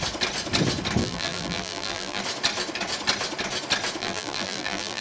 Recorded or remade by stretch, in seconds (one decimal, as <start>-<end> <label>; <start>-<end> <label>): 0.0-1.0 recorded; 1.0-2.2 remade; 2.2-4.0 recorded; 4.0-5.0 remade